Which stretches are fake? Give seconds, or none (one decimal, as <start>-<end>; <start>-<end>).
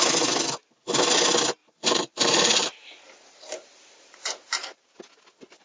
1.6-5.0